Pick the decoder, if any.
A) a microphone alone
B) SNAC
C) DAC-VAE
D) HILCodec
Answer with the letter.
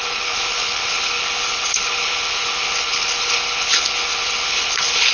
D